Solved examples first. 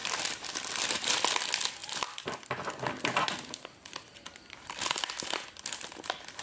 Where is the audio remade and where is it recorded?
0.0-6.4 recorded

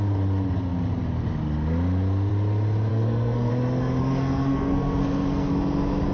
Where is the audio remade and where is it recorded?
0.0-2.9 recorded; 2.9-3.5 remade; 3.5-4.0 recorded; 4.0-5.5 remade; 5.5-6.1 recorded